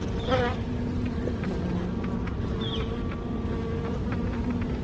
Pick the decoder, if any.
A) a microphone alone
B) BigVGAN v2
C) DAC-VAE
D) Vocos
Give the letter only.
A